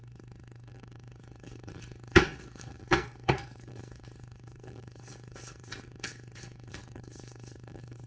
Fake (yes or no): yes